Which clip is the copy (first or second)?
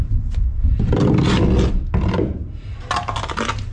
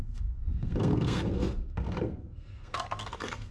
second